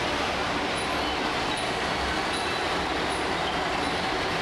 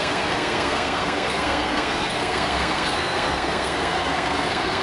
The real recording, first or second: first